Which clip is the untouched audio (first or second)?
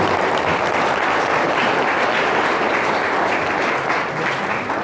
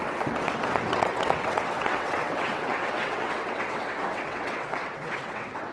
first